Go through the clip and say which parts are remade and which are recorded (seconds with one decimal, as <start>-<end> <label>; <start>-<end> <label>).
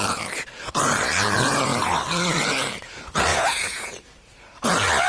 0.0-3.3 recorded; 3.3-3.9 remade; 3.9-5.1 recorded